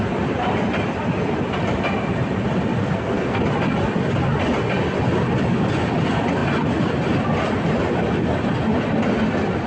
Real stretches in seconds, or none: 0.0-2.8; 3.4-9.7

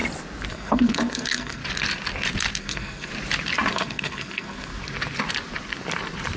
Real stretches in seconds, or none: 0.0-0.5; 1.6-2.6; 3.1-3.7; 4.7-6.4

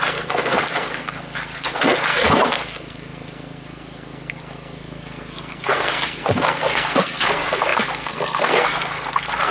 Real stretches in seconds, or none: none

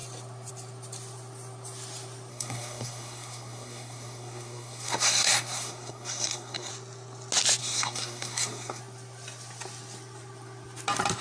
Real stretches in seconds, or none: 0.0-2.3; 6.7-7.6; 8.8-11.2

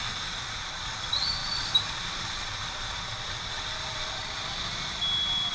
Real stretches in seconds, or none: 4.2-5.5